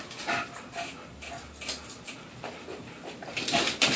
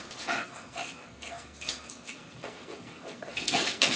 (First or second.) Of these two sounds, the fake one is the second